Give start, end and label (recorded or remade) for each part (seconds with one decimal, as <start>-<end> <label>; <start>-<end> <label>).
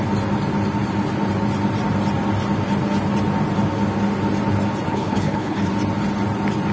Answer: 0.0-4.9 recorded; 4.9-5.7 remade; 5.7-6.7 recorded